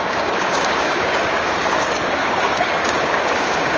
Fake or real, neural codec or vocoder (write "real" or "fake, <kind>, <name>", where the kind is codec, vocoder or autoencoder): fake, codec, DAC